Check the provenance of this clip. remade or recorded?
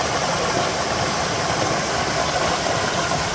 recorded